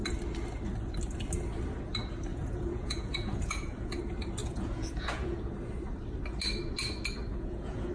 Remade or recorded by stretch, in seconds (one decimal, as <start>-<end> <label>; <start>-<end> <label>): 0.0-2.3 recorded; 2.3-4.0 remade; 4.0-4.4 recorded; 4.4-5.5 remade; 5.5-7.3 recorded; 7.3-7.9 remade